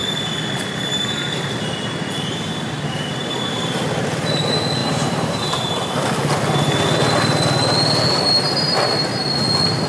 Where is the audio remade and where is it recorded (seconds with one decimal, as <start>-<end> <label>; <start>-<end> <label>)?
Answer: 0.0-4.8 recorded; 4.8-5.7 remade; 5.7-9.9 recorded